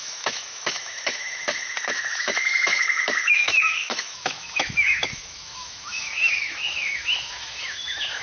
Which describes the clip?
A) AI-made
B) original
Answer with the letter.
A